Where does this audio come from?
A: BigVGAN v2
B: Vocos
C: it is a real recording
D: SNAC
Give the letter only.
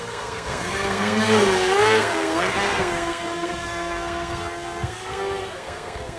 D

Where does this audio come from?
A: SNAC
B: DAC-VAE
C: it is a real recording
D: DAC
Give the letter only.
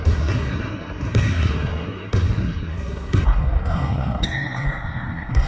A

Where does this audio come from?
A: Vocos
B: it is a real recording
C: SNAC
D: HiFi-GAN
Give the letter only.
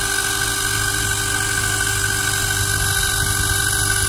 B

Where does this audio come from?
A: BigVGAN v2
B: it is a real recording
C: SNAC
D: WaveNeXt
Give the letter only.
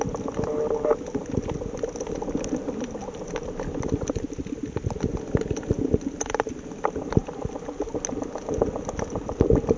B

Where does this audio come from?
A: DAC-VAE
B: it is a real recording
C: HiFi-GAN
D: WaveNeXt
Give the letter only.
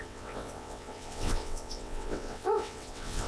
D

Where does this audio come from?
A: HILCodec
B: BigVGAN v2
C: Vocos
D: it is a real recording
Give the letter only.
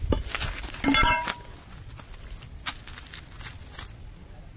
D